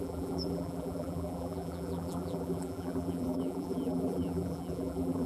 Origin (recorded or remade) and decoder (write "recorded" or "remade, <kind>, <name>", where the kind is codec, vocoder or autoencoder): remade, vocoder, BigVGAN v2